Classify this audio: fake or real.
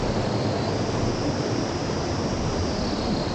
real